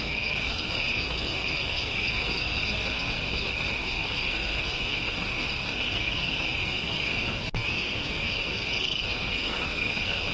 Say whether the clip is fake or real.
fake